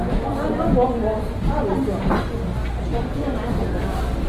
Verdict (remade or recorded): recorded